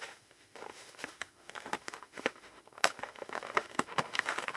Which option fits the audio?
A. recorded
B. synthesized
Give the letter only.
B